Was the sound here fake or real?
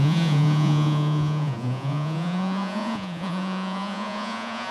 fake